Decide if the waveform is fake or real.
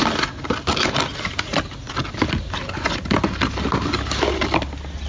real